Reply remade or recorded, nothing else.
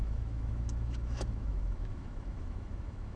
remade